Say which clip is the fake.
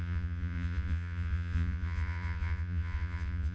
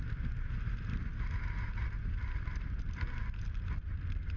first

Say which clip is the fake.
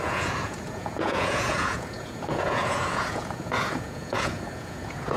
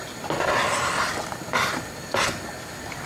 first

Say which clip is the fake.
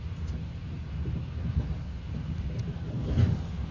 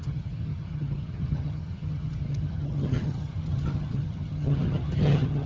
second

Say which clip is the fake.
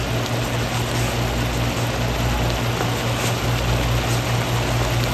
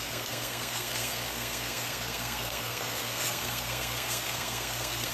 second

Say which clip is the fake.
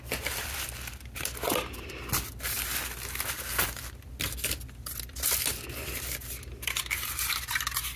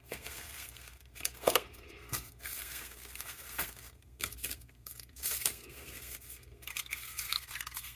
second